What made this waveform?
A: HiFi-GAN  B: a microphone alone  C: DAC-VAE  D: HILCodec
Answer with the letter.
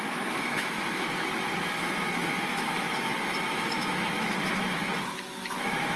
C